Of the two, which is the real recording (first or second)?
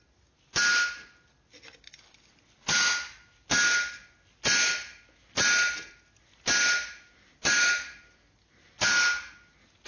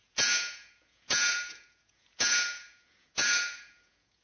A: first